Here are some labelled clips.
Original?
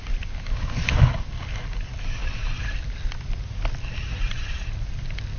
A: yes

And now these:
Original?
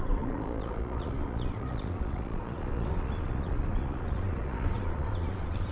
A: no